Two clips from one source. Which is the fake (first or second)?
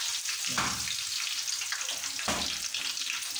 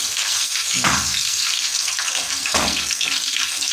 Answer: second